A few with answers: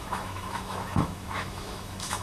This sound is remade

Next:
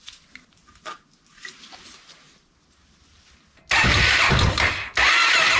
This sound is recorded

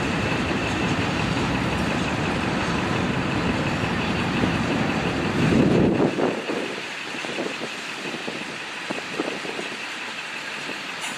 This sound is remade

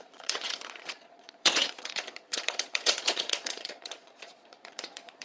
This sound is remade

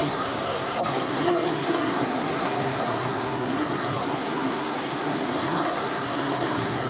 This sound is remade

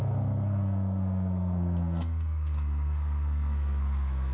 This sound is remade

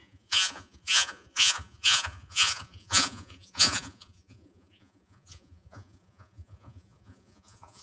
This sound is remade